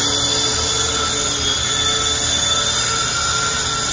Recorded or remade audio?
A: recorded